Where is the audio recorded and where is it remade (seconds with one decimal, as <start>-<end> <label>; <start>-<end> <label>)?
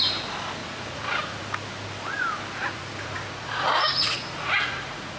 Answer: 0.0-0.6 recorded; 0.6-1.4 remade; 1.4-2.6 recorded; 2.6-5.2 remade